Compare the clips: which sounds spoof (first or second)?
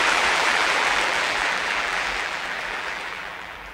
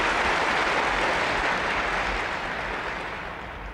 first